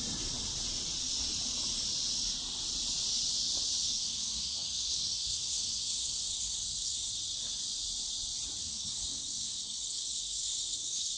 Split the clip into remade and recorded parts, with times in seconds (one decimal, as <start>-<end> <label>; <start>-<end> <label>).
0.0-3.8 recorded; 3.8-7.1 remade; 7.1-8.6 recorded; 8.6-11.2 remade